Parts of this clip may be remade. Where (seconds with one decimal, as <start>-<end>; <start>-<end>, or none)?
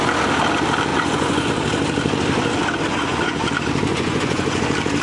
0.9-1.5; 2.9-3.5; 3.9-4.6